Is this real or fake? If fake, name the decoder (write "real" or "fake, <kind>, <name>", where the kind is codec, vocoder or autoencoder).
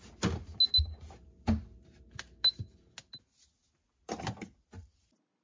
real